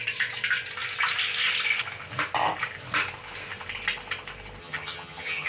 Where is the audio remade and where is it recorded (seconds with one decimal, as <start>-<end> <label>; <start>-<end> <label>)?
0.0-4.6 recorded; 4.6-5.5 remade